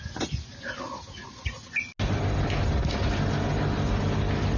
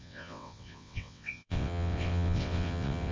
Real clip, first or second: first